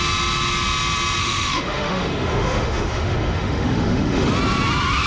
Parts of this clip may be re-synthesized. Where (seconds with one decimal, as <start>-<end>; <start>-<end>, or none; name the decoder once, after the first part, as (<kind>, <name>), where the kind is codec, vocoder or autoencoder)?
1.2-4.3 (autoencoder, DAC-VAE)